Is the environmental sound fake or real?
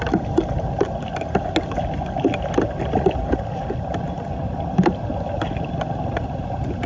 real